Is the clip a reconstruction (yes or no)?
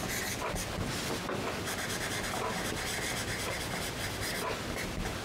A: no